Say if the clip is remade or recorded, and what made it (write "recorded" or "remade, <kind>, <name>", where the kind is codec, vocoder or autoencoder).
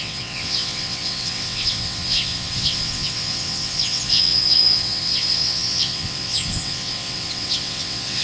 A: remade, vocoder, WaveNeXt